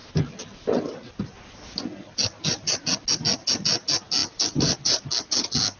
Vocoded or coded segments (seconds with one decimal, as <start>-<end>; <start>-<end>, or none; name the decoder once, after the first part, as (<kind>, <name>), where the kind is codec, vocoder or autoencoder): 4.2-5.0 (vocoder, BigVGAN v2)